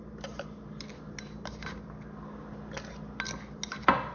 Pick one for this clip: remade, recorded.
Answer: recorded